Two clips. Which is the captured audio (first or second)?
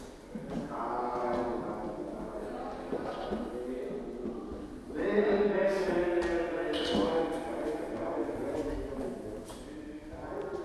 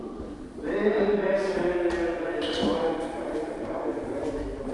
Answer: first